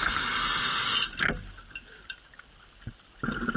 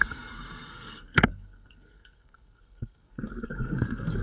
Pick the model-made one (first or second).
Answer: second